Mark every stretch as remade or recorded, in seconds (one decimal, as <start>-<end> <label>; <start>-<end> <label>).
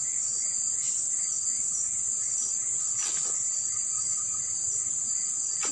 0.0-5.7 recorded